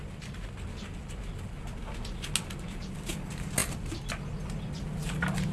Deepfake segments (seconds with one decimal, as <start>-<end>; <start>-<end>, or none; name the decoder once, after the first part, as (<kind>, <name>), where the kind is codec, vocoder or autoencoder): none